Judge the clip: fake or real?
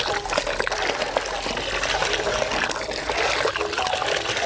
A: real